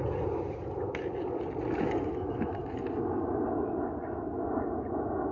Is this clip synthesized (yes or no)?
no